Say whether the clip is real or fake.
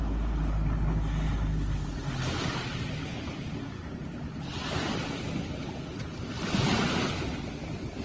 real